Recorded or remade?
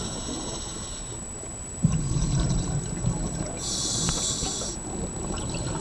recorded